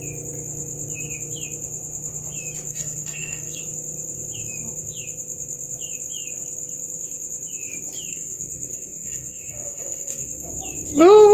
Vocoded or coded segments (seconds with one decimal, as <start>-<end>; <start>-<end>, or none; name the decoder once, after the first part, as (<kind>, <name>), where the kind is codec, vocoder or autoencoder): 2.7-3.6 (codec, SNAC); 8.1-10.5